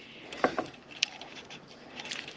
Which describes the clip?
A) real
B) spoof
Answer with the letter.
B